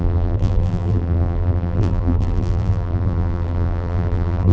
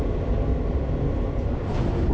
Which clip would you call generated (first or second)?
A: first